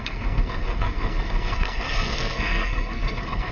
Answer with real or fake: fake